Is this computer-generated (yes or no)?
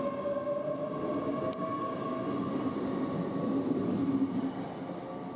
no